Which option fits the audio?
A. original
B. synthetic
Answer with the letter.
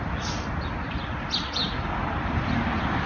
A